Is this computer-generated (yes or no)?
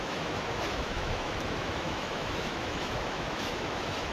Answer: yes